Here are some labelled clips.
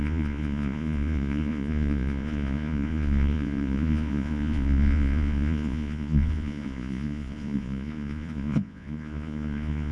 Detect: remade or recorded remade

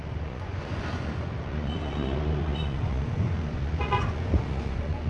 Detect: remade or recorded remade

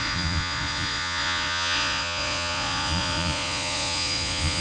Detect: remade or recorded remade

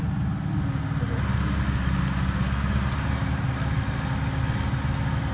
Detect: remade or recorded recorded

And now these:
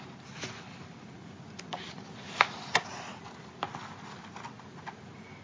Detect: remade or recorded recorded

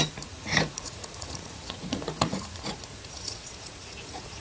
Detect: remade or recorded remade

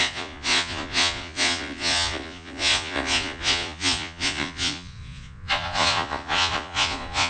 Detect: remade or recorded remade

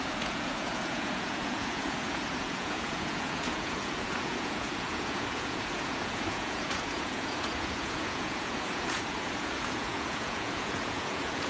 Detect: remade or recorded remade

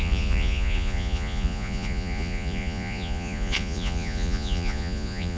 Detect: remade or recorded remade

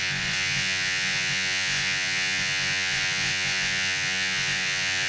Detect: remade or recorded remade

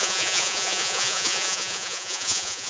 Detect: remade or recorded remade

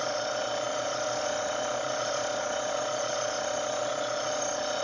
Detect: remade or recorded remade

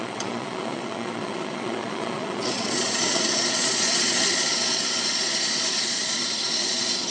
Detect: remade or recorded remade